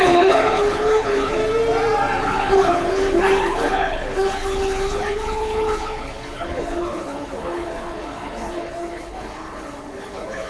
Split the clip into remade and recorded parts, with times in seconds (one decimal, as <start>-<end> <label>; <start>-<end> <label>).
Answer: 0.0-1.4 remade; 1.4-2.2 recorded; 2.2-10.5 remade

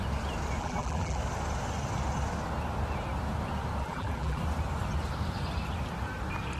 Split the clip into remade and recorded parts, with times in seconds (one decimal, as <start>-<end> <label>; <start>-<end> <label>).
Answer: 0.0-0.6 recorded; 0.6-1.2 remade; 1.2-3.8 recorded; 3.8-4.4 remade; 4.4-6.6 recorded

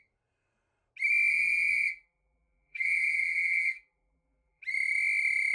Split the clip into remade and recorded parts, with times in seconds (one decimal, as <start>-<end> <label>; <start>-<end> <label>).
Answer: 0.0-1.3 recorded; 1.3-4.6 remade; 4.6-5.5 recorded

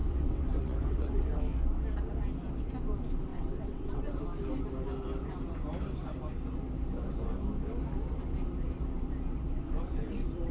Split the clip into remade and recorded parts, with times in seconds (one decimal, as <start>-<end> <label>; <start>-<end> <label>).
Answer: 0.0-1.4 remade; 1.4-3.3 recorded; 3.3-4.2 remade; 4.2-10.5 recorded